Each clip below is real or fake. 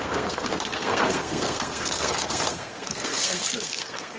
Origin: fake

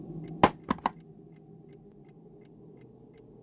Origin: real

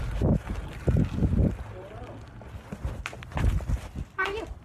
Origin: real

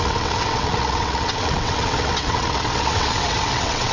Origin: fake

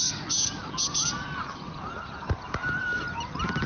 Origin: real